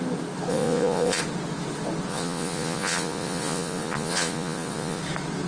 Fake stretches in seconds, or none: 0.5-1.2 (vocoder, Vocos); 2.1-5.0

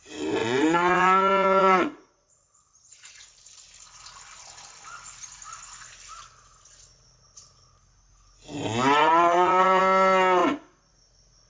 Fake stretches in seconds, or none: 0.4-3.1 (vocoder, Vocos); 9.0-9.8

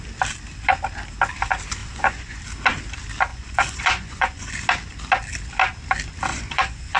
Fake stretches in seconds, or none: 1.8-2.4 (vocoder, Vocos); 3.3-4.5; 6.3-7.0

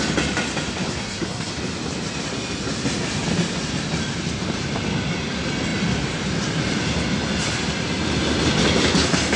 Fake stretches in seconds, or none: 1.0-1.5 (codec, SNAC)